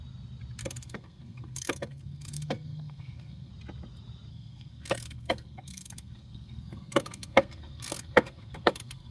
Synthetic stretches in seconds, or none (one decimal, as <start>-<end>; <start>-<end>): 0.6-3.5; 4.3-9.1